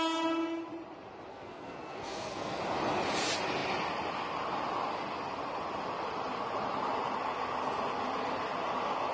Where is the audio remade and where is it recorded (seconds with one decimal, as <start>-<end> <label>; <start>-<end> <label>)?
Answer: 0.0-1.3 recorded; 1.3-2.6 remade; 2.6-9.1 recorded